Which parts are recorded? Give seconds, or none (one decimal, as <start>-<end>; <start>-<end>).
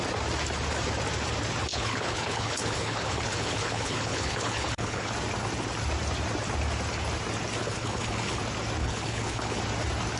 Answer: 0.0-1.7; 5.1-7.6; 8.4-8.8; 9.6-10.2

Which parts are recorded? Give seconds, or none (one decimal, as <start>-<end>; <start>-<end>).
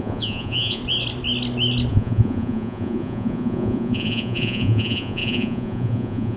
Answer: 0.8-1.9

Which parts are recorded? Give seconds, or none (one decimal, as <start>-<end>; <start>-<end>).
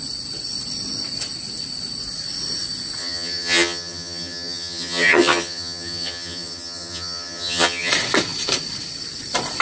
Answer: 0.0-3.0; 7.9-9.6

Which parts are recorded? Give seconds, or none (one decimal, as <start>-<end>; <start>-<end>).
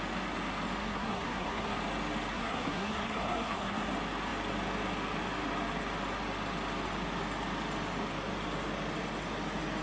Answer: 0.0-0.8; 1.8-2.3; 3.9-9.8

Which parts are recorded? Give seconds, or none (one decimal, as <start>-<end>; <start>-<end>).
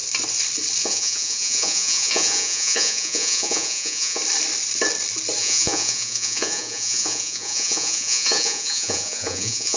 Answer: 0.0-0.8; 4.2-5.4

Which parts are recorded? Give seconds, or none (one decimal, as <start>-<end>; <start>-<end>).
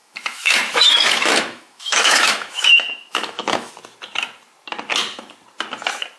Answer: 3.7-6.2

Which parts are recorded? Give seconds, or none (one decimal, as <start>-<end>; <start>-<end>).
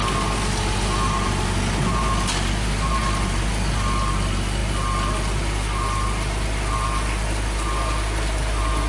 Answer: 0.0-8.9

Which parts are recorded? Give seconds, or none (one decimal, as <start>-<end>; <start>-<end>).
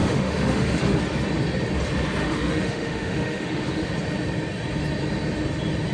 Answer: 1.0-2.2; 3.9-5.9